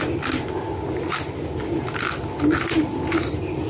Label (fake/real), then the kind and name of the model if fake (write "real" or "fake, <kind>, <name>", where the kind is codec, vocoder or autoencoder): real